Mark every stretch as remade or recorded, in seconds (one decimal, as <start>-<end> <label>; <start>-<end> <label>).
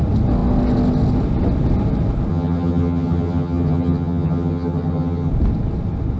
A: 0.0-2.3 recorded; 2.3-5.3 remade; 5.3-6.2 recorded